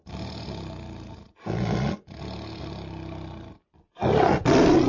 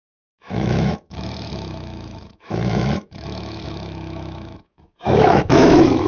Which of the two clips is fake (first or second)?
second